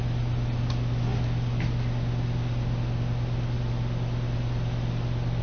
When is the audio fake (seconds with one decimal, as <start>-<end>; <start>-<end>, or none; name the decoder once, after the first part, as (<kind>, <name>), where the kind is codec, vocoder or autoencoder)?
none